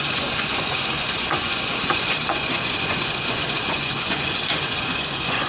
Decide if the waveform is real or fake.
fake